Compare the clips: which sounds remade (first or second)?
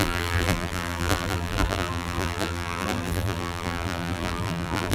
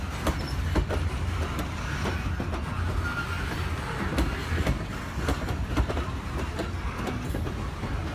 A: first